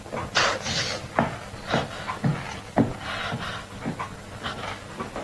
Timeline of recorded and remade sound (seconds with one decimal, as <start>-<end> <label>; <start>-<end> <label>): 0.0-5.2 recorded